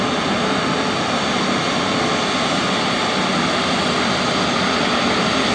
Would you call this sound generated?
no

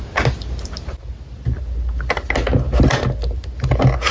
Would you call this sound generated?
no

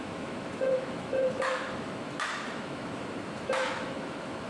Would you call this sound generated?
yes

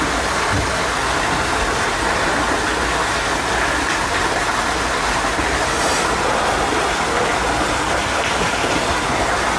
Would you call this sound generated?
no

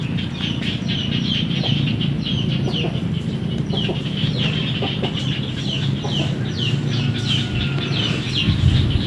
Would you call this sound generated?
no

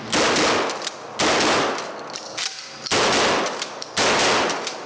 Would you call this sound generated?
no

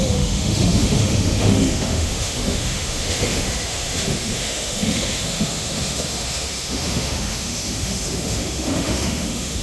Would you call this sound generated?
yes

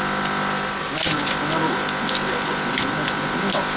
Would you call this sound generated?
no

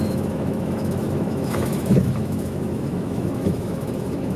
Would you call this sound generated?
yes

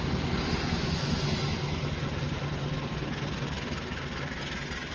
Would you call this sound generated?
no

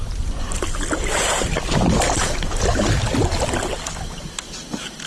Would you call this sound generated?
no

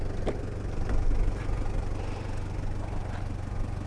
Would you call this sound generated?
no